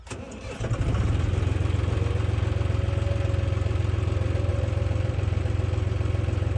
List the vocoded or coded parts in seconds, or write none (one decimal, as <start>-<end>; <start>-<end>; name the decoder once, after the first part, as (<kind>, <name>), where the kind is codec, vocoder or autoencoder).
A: 4.5-5.4 (vocoder, BigVGAN v2)